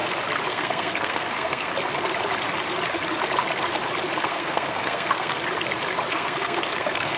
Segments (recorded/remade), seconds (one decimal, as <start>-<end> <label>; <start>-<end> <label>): 0.0-0.5 recorded; 0.5-1.7 remade; 1.7-4.2 recorded; 4.2-5.3 remade; 5.3-6.1 recorded; 6.1-7.2 remade

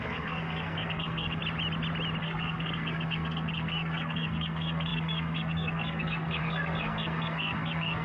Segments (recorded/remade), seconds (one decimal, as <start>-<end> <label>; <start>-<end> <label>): 0.0-1.4 remade; 1.4-2.2 recorded; 2.2-8.0 remade

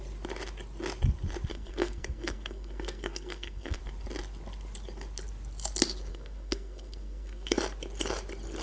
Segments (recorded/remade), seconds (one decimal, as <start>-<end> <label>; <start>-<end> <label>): 0.0-1.5 recorded; 1.5-3.8 remade; 3.8-6.1 recorded; 6.1-7.6 remade; 7.6-8.6 recorded

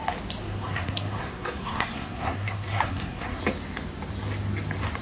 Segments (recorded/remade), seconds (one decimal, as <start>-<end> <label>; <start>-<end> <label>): 0.0-0.4 recorded; 0.4-3.4 remade; 3.4-5.0 recorded